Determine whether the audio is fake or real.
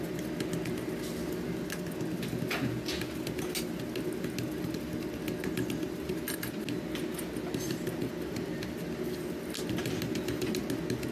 real